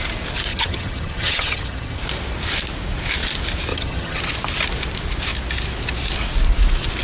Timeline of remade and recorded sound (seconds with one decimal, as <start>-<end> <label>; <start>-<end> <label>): 0.0-0.5 recorded; 0.5-2.0 remade; 2.0-3.7 recorded; 3.7-4.2 remade; 4.2-7.0 recorded